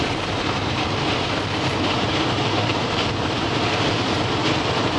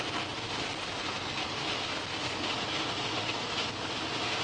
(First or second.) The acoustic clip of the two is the second